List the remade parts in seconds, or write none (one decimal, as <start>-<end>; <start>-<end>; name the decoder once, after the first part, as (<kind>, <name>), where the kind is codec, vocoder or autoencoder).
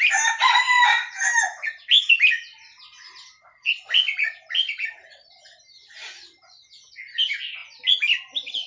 none